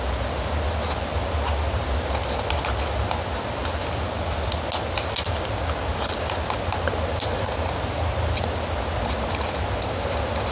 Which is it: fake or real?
real